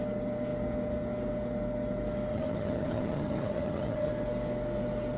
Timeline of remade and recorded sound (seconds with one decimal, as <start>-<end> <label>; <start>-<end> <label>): 0.0-2.3 recorded; 2.3-4.1 remade; 4.1-5.2 recorded